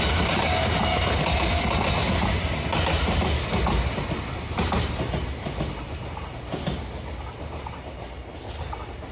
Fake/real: real